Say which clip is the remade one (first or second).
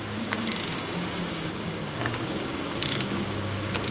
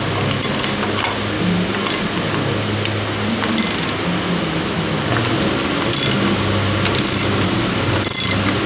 first